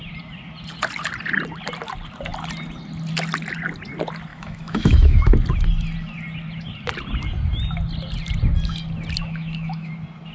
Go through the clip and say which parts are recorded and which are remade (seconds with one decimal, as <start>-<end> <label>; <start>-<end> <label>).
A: 0.0-4.3 recorded; 4.3-5.3 remade; 5.3-9.2 recorded; 9.2-9.9 remade; 9.9-10.3 recorded